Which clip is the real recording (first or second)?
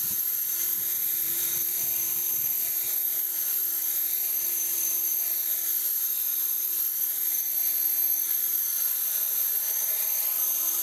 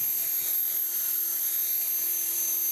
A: second